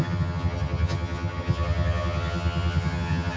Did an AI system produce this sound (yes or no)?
yes